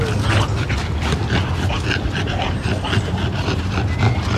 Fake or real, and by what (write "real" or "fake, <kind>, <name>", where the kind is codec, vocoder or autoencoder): real